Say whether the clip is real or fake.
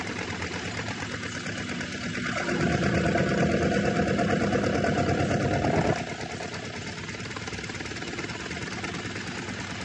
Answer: real